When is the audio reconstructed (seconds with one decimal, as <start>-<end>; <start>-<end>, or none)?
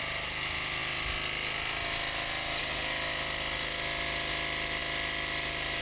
none